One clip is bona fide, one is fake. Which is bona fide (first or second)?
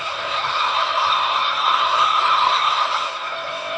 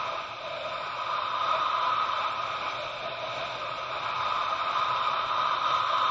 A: second